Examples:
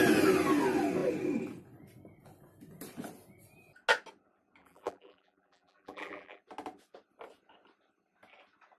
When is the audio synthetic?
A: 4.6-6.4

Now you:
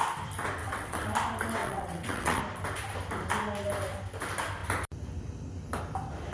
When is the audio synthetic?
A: 0.6-1.1; 1.6-2.4

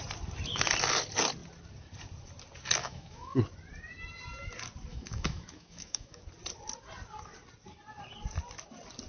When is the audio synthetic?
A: 2.8-3.4; 4.9-6.2

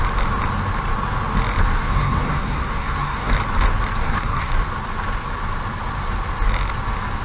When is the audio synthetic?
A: 1.7-3.3; 4.0-4.5

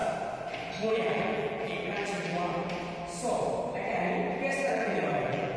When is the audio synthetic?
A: 0.9-2.6; 4.7-5.6